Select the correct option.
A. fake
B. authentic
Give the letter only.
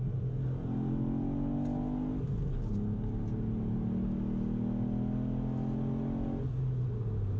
B